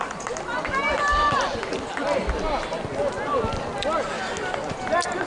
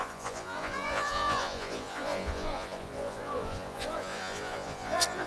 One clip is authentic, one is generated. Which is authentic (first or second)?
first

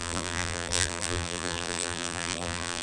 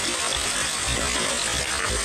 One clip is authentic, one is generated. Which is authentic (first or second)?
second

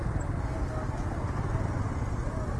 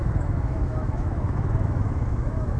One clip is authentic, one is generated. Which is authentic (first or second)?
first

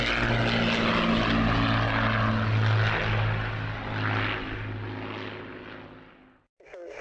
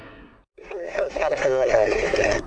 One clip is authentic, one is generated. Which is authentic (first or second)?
first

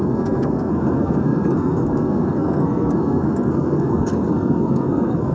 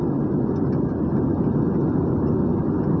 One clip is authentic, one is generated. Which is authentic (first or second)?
second